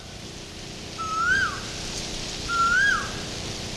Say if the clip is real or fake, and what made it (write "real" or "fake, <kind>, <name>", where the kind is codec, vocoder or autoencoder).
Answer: real